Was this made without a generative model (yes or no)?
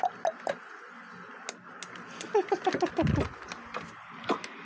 yes